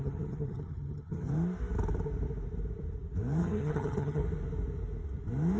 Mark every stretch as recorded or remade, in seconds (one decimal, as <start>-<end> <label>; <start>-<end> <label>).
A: 0.0-1.3 remade; 1.3-3.4 recorded; 3.4-4.2 remade; 4.2-5.6 recorded